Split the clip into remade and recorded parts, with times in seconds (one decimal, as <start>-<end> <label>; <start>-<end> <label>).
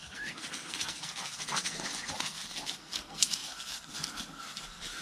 0.0-5.0 remade